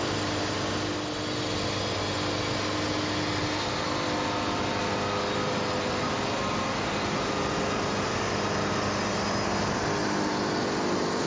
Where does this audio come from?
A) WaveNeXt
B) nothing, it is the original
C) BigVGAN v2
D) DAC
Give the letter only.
B